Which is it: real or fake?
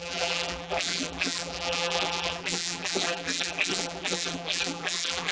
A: fake